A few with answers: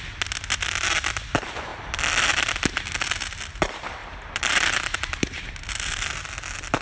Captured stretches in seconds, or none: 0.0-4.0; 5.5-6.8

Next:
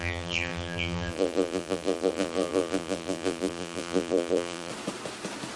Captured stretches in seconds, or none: 4.7-5.6